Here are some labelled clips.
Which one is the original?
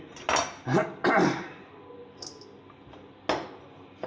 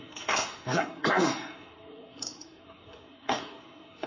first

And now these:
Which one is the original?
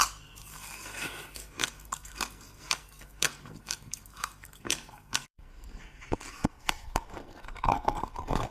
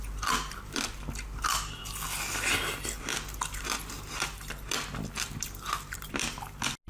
second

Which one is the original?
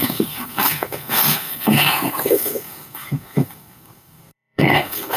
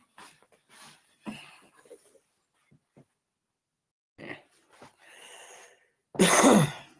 second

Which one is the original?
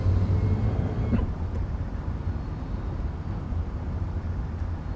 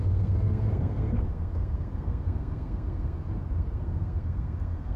first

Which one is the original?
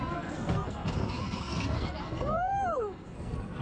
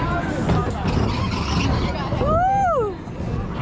second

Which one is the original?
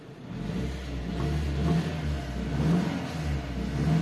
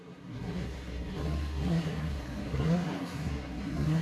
first